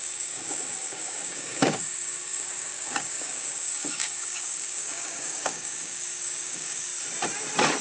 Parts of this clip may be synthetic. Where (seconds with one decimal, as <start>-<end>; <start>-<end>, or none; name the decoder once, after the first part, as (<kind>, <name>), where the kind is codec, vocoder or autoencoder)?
0.0-6.9 (codec, DAC)